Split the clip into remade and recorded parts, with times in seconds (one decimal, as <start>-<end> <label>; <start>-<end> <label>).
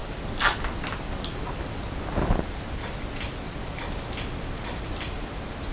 0.0-5.7 recorded